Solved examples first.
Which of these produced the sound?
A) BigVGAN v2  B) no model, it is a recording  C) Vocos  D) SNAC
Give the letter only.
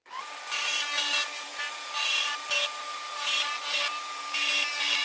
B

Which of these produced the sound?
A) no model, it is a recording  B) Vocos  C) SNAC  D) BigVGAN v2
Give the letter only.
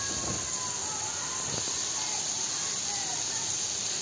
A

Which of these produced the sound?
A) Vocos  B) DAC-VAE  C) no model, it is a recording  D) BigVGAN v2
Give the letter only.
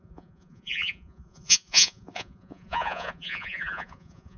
A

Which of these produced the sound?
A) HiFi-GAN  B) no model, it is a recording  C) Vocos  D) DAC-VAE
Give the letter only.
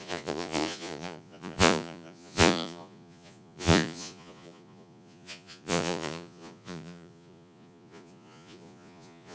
C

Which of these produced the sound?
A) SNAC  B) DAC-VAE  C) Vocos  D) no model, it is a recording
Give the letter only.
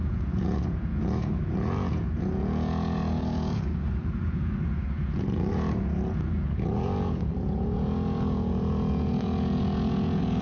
C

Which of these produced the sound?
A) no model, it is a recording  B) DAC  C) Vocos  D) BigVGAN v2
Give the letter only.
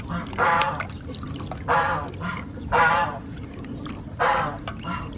A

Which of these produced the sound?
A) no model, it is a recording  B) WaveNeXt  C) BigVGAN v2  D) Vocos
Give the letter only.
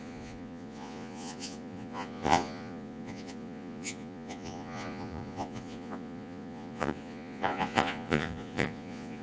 D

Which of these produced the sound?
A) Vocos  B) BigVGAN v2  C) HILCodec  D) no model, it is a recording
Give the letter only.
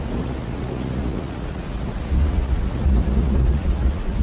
A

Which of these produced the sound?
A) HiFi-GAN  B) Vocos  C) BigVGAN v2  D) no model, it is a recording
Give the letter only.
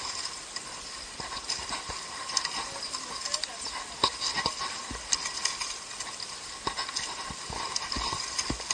D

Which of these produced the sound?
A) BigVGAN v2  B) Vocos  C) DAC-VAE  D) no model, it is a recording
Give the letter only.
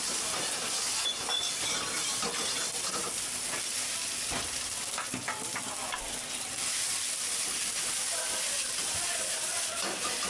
D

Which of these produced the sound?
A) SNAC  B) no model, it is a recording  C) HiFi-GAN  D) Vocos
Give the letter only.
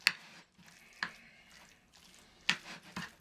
B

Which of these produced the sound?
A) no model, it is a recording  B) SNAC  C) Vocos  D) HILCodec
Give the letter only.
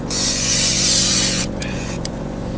C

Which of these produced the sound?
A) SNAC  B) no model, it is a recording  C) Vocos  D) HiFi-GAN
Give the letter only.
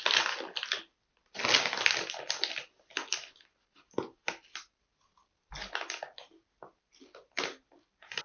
B